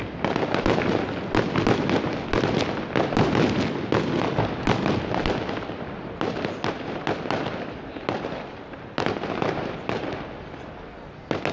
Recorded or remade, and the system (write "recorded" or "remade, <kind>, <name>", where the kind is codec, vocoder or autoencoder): recorded